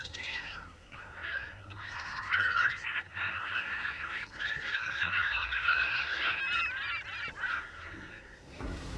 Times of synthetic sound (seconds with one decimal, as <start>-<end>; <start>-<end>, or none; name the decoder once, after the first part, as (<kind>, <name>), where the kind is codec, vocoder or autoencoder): 0.0-6.4 (codec, SNAC); 7.5-9.0